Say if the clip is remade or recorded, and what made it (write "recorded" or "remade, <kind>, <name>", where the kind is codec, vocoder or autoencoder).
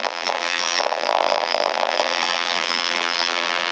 remade, vocoder, BigVGAN v2